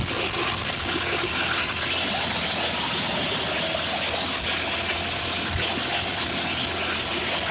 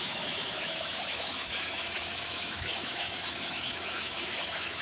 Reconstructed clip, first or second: second